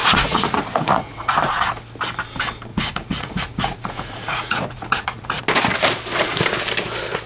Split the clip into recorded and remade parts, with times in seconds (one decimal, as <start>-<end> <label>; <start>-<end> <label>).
0.0-1.5 remade; 1.5-2.7 recorded; 2.7-5.4 remade; 5.4-7.3 recorded